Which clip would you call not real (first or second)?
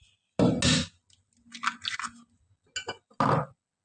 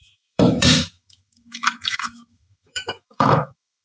second